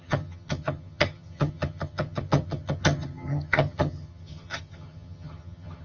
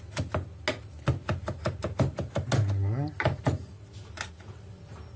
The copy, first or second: first